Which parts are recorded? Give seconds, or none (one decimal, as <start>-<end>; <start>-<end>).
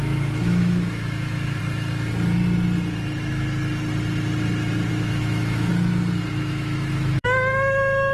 1.6-4.9; 5.7-6.3